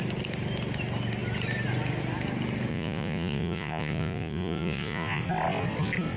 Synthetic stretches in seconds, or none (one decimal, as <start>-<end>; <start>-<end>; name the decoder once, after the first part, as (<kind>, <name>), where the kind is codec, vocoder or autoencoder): 2.7-5.2 (vocoder, Vocos)

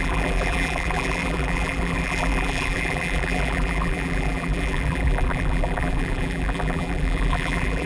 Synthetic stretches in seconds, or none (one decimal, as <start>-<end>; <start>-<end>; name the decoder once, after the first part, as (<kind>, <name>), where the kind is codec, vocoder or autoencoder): 0.0-7.9 (vocoder, BigVGAN v2)

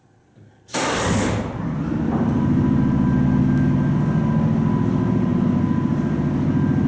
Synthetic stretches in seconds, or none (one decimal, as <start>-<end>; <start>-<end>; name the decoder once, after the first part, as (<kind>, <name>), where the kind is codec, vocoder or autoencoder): none

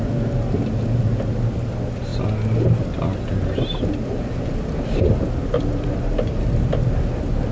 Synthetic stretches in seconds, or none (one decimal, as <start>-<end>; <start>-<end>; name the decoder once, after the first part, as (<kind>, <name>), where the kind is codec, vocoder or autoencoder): none

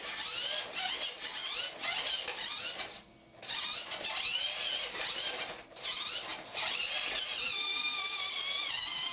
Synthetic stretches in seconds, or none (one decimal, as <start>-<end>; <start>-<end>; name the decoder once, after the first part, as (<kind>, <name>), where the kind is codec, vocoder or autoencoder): none